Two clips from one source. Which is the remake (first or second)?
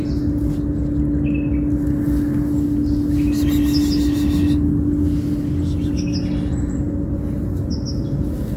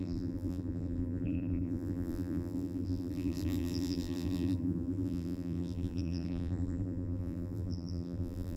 second